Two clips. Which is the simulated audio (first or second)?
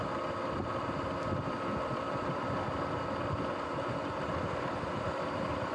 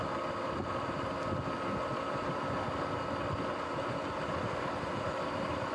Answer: first